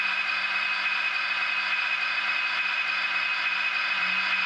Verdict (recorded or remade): recorded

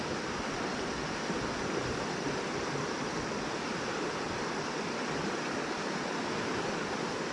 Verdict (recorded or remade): recorded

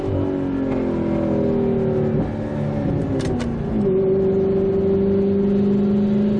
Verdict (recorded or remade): recorded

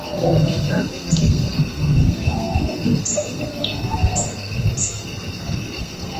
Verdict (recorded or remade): remade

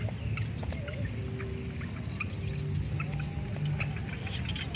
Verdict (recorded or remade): recorded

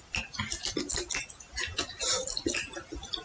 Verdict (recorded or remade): recorded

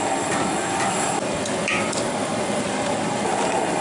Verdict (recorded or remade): recorded